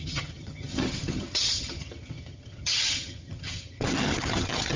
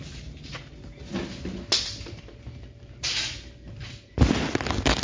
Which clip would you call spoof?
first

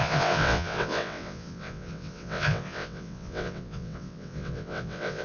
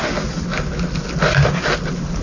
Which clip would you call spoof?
first